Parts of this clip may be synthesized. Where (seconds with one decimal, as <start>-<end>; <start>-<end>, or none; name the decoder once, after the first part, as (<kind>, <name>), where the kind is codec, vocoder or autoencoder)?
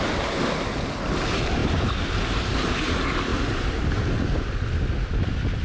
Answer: none